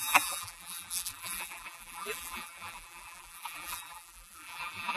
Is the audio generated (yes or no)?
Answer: yes